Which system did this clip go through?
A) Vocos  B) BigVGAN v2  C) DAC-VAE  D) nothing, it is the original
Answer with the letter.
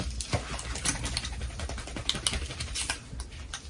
D